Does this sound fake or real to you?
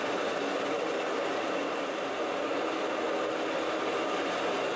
real